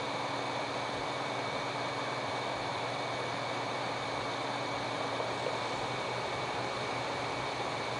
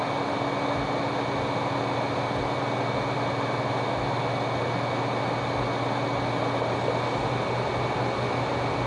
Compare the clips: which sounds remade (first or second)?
first